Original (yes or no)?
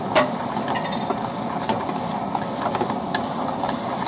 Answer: yes